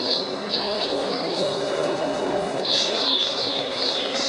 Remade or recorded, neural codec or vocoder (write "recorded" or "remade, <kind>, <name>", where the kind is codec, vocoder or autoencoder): remade, codec, SNAC